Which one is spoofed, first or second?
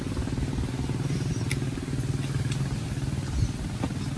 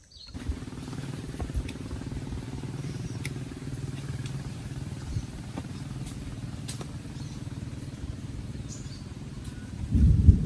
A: second